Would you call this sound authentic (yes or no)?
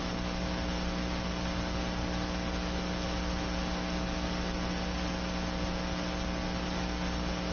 yes